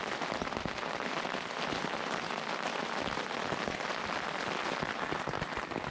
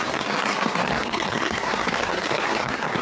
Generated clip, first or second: second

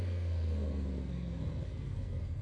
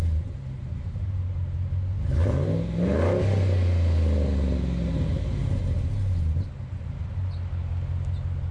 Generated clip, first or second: first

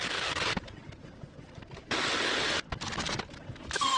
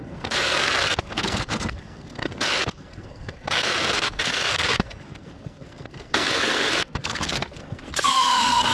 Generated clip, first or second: second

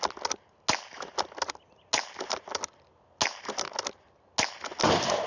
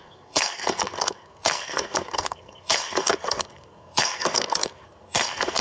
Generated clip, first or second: second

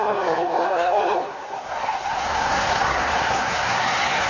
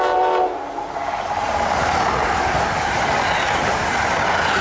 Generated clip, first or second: first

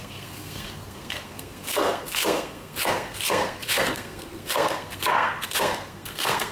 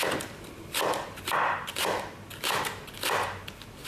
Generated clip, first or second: first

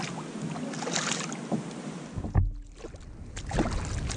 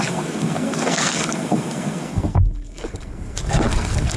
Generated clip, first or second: second